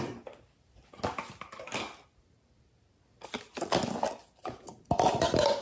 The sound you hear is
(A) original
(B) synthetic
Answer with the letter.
A